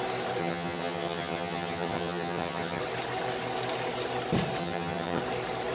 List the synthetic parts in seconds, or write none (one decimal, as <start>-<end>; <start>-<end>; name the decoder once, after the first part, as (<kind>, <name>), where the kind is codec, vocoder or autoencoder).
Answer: 0.4-2.8 (vocoder, HiFi-GAN); 4.6-5.2